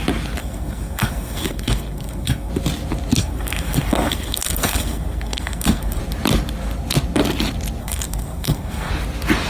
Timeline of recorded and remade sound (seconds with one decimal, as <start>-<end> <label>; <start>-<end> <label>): 0.0-0.4 recorded; 0.4-2.5 remade; 2.5-3.2 recorded; 3.2-6.0 remade; 6.0-7.8 recorded; 7.8-8.9 remade; 8.9-9.5 recorded